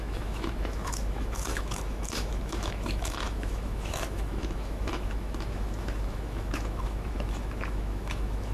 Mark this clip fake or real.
fake